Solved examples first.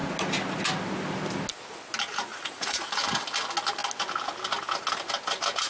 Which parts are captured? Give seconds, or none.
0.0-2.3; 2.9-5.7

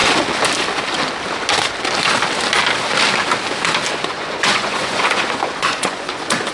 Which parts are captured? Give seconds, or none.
0.0-3.9

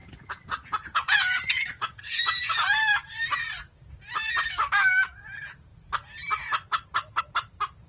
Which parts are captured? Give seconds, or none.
2.5-7.9

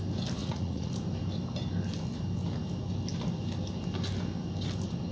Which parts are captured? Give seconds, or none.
0.0-0.4; 0.9-5.1

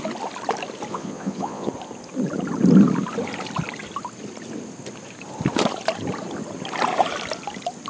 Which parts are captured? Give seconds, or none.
0.0-0.9; 1.7-7.9